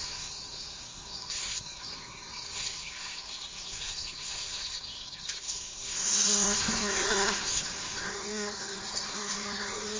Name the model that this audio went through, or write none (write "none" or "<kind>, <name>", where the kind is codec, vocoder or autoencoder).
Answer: codec, SNAC